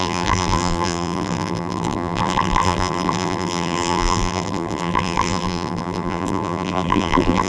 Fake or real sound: fake